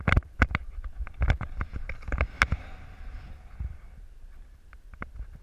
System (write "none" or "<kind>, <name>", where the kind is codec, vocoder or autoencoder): none